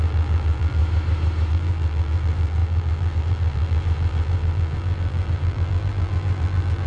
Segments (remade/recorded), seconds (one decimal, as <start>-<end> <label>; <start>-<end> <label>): 0.0-0.8 remade; 0.8-1.5 recorded; 1.5-6.9 remade